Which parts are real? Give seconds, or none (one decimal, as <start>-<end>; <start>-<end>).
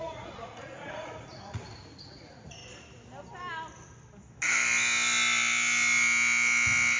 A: 2.6-7.0